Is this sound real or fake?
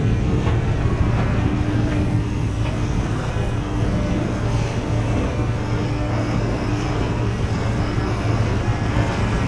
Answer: fake